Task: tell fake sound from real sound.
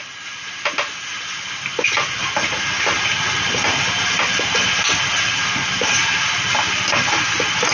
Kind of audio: real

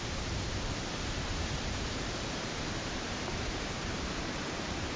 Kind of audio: fake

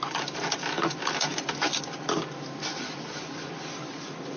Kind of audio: real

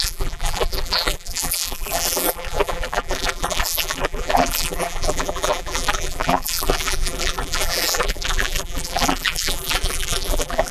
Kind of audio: fake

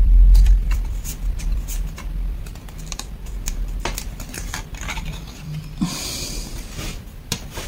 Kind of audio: fake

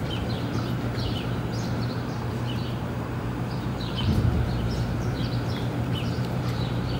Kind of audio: fake